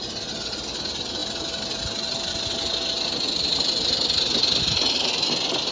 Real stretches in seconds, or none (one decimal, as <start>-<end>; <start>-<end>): 0.0-5.7